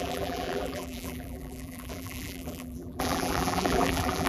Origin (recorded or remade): remade